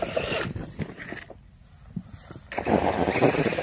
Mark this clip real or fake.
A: real